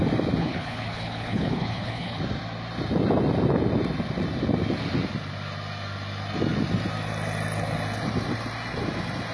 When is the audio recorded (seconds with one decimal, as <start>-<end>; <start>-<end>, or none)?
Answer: 0.0-0.4; 2.2-9.3